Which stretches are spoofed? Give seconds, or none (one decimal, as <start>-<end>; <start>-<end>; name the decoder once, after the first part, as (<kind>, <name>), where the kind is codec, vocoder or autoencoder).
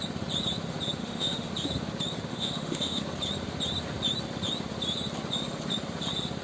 1.0-1.5 (autoencoder, DAC-VAE); 2.3-3.0